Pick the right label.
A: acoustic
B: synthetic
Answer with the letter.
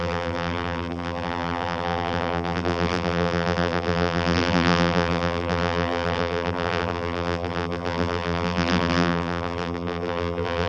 B